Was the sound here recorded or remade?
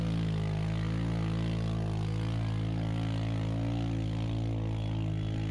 recorded